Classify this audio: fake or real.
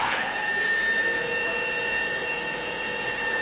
fake